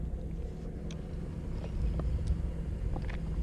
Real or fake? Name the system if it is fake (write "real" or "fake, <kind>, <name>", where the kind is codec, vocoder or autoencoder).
real